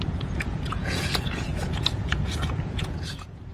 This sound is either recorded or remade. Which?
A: remade